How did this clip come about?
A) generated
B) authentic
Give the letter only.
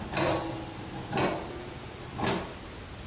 B